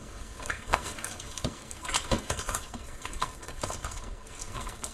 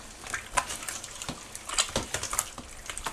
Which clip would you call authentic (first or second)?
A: second